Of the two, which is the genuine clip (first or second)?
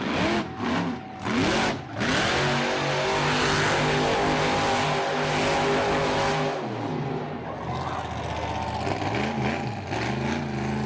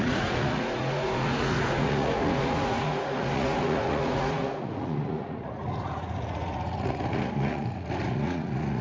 first